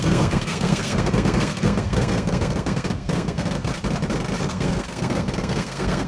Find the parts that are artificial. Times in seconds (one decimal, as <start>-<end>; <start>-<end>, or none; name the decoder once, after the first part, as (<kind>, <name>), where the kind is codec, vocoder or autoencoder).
0.0-3.7 (codec, SNAC); 4.4-6.1